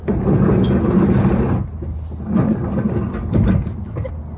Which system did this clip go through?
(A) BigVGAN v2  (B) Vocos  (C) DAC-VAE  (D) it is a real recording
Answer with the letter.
D